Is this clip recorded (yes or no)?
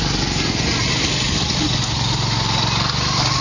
yes